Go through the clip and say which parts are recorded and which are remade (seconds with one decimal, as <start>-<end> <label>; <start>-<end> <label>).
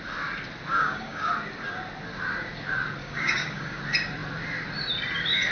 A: 0.0-0.7 recorded; 0.7-1.3 remade; 1.3-3.0 recorded; 3.0-3.8 remade; 3.8-5.5 recorded